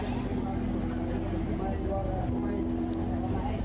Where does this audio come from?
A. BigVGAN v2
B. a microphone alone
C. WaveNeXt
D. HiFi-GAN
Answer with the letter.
B